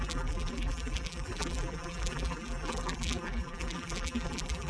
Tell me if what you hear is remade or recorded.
remade